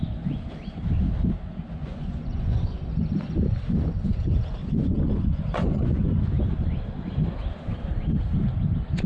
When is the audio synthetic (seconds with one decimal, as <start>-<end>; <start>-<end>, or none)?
1.8-2.8; 4.6-6.2